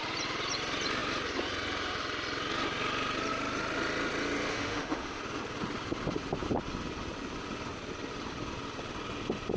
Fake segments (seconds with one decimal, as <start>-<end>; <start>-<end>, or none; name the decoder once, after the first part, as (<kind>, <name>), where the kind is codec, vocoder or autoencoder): 4.5-5.2 (autoencoder, DAC-VAE)